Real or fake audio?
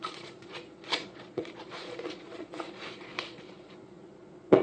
fake